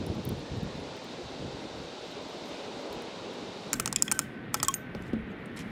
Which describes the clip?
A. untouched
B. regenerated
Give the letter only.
A